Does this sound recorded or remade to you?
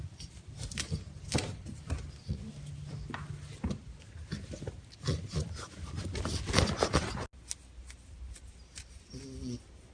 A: recorded